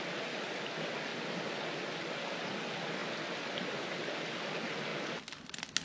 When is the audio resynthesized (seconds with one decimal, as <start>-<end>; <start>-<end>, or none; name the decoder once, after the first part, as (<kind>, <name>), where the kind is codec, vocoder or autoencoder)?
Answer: none